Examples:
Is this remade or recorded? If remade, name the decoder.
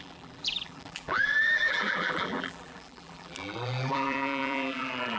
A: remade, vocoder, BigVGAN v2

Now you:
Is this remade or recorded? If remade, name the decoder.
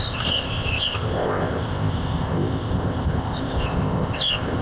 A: remade, codec, ZipCodec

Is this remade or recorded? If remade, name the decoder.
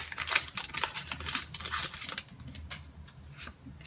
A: recorded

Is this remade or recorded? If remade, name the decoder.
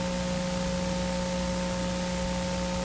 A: recorded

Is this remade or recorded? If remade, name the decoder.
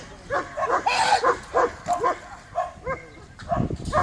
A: recorded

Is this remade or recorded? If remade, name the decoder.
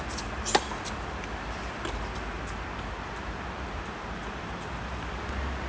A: recorded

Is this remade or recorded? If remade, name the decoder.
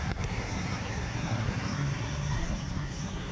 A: remade, codec, SNAC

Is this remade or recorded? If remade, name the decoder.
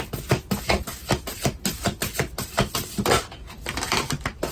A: recorded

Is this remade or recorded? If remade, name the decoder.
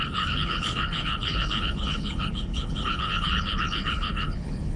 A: remade, codec, HILCodec